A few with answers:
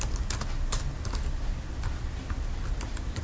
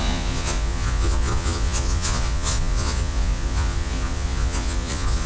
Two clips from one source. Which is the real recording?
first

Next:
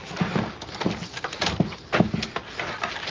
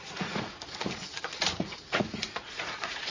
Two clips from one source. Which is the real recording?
first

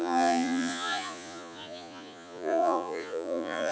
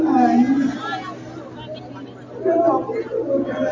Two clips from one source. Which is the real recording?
second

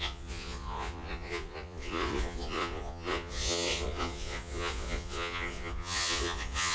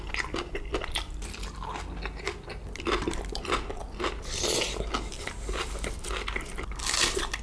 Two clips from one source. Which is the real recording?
second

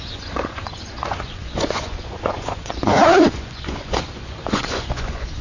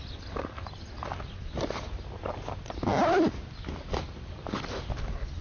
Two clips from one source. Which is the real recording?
second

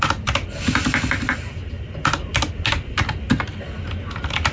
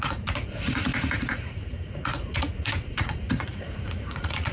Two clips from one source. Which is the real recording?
first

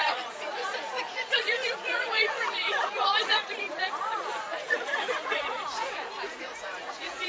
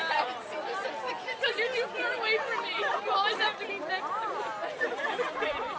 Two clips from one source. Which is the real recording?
second